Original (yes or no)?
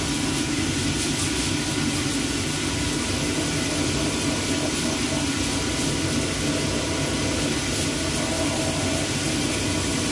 yes